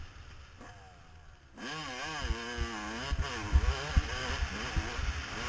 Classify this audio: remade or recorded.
recorded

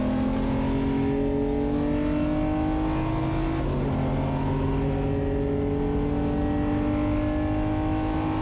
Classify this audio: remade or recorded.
recorded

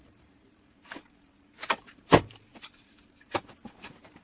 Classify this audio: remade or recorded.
remade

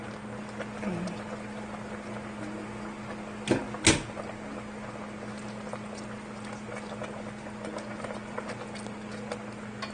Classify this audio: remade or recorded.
recorded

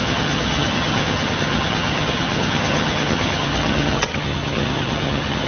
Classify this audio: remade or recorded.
remade